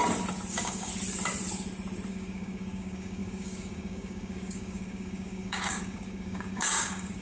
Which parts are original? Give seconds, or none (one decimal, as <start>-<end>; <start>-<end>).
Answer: 0.0-0.5; 0.9-2.1